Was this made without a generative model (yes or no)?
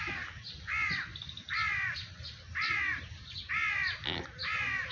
yes